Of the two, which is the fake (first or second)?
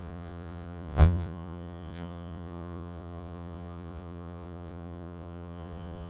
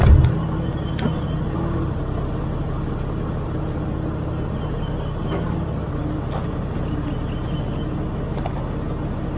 first